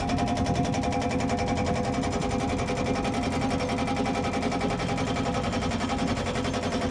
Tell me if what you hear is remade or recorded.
recorded